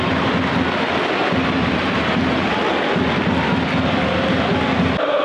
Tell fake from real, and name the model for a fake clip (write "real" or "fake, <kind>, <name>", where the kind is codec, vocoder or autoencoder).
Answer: real